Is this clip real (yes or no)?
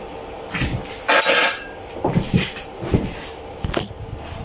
yes